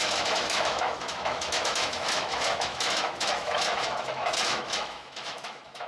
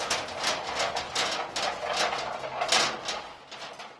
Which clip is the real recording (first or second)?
second